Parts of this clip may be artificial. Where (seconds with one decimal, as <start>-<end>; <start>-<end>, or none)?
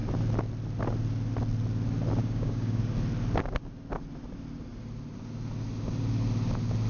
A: 2.2-2.8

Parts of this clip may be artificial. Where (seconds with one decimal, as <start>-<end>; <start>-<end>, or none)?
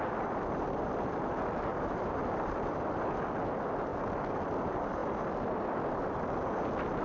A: 1.7-2.2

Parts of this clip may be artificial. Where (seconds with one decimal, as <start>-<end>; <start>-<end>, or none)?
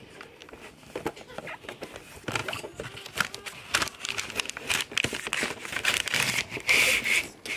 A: 0.0-0.4; 1.4-2.4; 4.0-7.6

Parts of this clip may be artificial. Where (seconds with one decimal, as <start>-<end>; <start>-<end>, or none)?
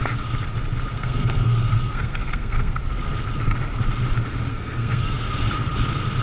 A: 0.9-2.8; 4.5-5.2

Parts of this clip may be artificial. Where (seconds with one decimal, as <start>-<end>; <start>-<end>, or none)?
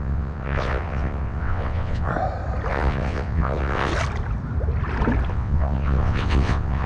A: 0.0-2.1; 2.7-3.9; 5.3-6.9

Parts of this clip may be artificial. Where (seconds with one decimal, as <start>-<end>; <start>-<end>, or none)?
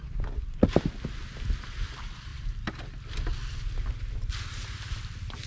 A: none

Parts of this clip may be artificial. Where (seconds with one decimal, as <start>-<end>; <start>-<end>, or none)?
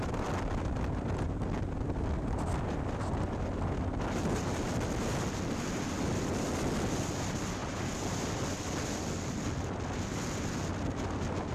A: 7.6-8.2